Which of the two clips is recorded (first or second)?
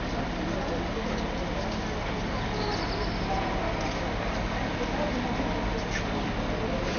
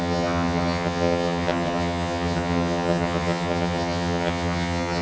first